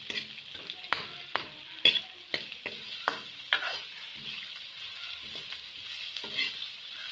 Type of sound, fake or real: real